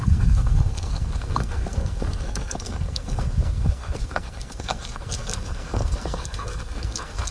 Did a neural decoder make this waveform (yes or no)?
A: yes